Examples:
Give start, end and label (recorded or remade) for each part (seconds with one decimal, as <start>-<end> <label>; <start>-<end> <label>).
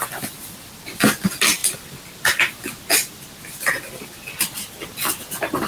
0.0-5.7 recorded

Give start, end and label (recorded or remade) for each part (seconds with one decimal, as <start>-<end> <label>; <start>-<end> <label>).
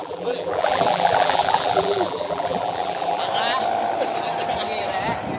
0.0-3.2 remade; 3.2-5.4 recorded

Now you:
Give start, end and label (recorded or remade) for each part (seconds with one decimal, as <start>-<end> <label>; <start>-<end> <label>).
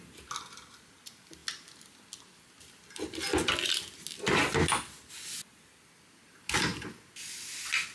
0.0-7.9 recorded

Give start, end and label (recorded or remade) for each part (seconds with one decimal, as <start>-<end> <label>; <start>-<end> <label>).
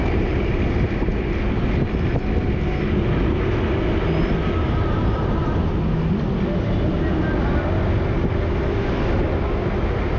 0.0-1.1 remade; 1.1-4.4 recorded; 4.4-5.4 remade; 5.4-10.2 recorded